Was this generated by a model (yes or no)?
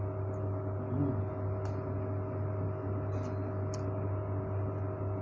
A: no